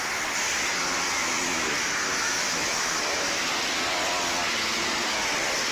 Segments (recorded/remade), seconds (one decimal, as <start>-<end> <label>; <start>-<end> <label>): 0.0-1.2 recorded; 1.2-3.5 remade; 3.5-5.7 recorded